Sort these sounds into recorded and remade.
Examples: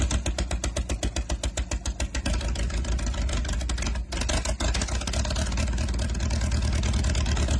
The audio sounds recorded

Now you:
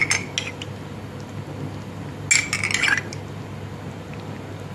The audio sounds recorded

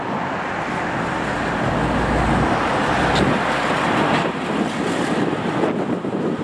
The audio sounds recorded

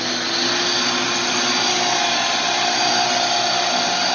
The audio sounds recorded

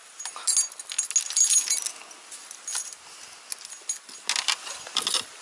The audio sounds recorded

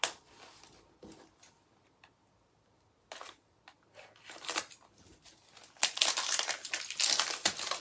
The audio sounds recorded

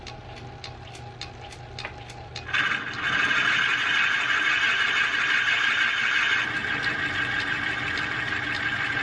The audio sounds recorded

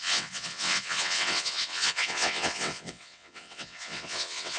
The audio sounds remade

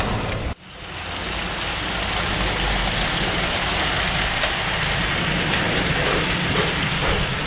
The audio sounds recorded